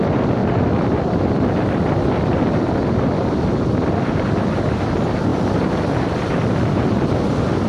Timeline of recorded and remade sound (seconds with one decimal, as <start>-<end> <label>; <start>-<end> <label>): 0.0-7.7 recorded